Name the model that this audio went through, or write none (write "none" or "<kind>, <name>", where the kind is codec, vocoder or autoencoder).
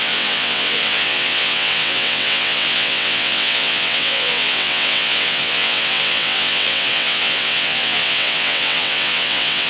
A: vocoder, WaveNeXt